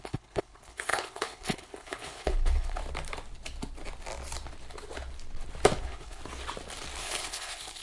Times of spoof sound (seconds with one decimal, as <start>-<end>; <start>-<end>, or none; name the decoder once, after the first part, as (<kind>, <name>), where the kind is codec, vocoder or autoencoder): 0.0-2.8 (codec, HILCodec); 5.8-6.2; 7.0-7.8